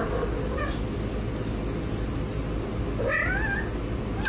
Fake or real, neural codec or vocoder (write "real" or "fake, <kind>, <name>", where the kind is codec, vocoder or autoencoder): real